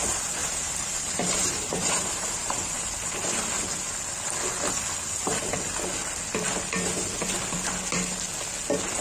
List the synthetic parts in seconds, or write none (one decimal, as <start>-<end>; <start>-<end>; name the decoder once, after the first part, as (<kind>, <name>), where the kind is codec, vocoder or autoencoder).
0.4-2.8 (vocoder, BigVGAN v2)